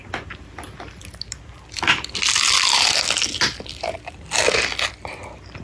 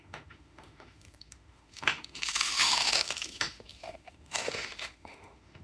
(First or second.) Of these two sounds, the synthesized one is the second